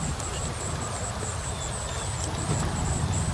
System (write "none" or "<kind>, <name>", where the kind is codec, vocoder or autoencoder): none